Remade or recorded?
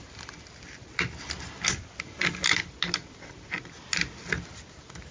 recorded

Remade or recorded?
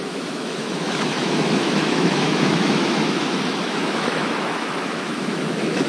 remade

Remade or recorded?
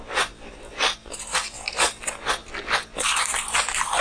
recorded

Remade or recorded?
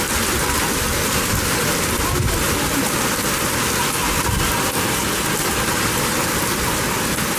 recorded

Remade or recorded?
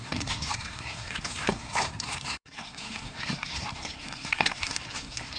remade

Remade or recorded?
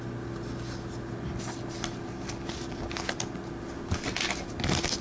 recorded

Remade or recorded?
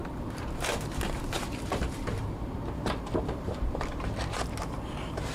remade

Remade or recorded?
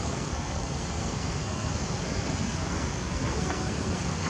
remade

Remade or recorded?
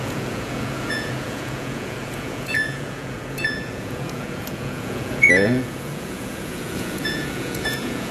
remade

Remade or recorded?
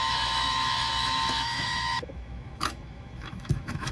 remade